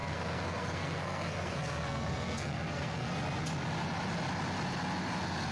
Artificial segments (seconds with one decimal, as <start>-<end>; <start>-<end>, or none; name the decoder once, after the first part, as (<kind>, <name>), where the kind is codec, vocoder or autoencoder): 0.0-3.1 (codec, SNAC)